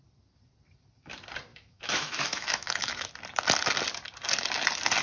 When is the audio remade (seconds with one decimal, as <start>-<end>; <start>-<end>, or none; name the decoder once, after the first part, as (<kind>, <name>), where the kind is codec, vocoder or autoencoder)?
1.5-3.1 (autoencoder, DAC-VAE)